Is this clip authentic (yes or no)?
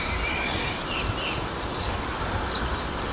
yes